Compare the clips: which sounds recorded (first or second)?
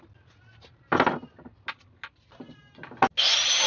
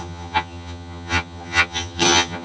first